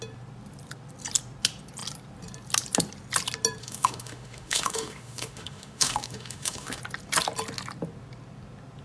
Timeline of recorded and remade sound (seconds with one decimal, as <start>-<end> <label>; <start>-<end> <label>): 0.0-3.6 recorded; 3.6-6.8 remade; 6.8-8.8 recorded